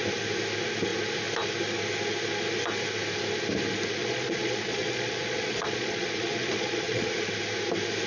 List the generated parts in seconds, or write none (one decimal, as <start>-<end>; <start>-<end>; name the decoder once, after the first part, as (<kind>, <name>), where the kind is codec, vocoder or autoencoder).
4.0-7.1 (vocoder, Vocos)